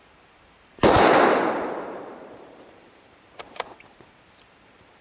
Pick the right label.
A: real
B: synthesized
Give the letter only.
B